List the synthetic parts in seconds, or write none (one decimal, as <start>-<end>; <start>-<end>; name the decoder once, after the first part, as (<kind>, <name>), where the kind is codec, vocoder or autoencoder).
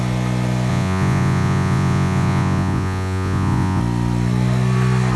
0.7-3.8 (vocoder, Vocos)